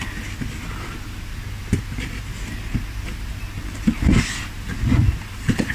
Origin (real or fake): real